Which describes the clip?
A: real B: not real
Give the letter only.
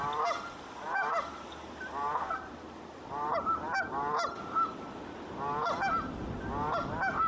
B